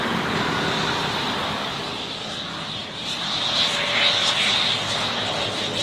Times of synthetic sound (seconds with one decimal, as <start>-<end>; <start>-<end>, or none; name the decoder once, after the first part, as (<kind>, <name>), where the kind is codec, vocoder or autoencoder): 2.8-4.0 (vocoder, BigVGAN v2)